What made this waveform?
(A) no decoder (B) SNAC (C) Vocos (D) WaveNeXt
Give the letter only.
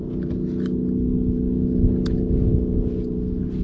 A